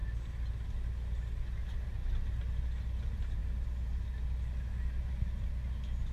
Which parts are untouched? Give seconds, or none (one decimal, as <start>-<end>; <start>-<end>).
0.0-6.1